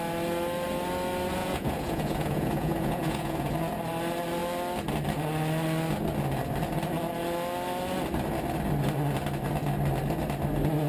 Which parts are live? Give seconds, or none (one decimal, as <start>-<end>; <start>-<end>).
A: 0.0-1.4; 3.5-10.9